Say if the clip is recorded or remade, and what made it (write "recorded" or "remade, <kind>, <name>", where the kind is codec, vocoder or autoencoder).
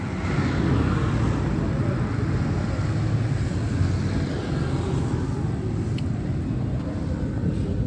recorded